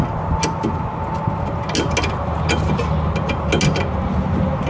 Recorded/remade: recorded